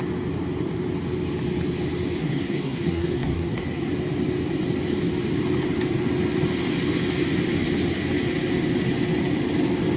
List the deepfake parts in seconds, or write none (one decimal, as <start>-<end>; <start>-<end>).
2.2-3.9

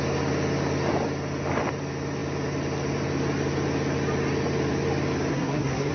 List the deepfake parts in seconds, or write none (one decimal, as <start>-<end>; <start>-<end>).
5.3-5.9

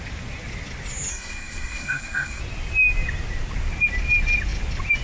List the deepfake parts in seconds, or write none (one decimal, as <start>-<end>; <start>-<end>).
1.1-2.4